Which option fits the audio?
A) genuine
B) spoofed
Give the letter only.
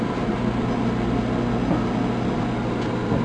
A